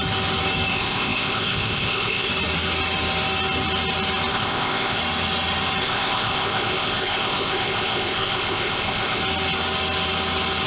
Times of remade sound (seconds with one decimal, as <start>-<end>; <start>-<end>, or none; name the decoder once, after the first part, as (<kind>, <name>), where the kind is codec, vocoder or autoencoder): 0.7-2.3 (codec, ZipCodec); 4.3-5.0; 5.8-9.2